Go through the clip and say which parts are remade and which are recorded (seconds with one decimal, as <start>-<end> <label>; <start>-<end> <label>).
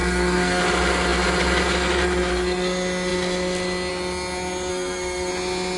0.0-0.6 remade; 0.6-4.7 recorded; 4.7-5.3 remade; 5.3-5.8 recorded